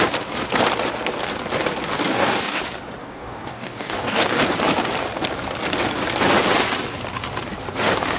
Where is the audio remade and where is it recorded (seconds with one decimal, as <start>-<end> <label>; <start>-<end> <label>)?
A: 0.0-2.1 recorded; 2.1-2.6 remade; 2.6-3.0 recorded; 3.0-4.4 remade; 4.4-8.2 recorded